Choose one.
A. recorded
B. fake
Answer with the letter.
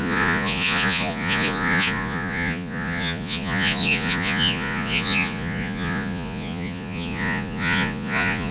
B